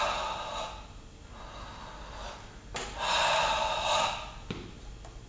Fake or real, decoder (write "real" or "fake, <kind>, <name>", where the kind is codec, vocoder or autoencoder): real